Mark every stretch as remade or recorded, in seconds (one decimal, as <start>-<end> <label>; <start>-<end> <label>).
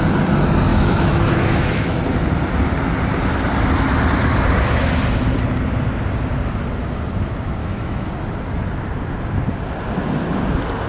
0.0-0.7 recorded; 0.7-2.0 remade; 2.0-7.6 recorded; 7.6-8.1 remade; 8.1-10.9 recorded